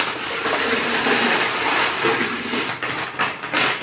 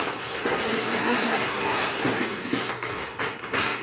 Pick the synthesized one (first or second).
second